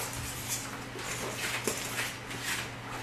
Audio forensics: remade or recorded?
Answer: recorded